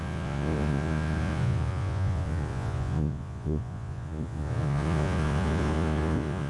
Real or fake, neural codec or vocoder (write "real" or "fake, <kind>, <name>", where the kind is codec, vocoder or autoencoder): fake, vocoder, Vocos